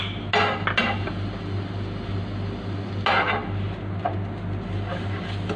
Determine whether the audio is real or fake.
real